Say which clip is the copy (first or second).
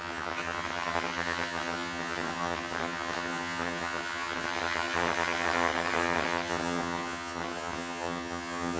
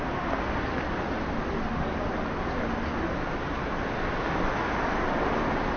first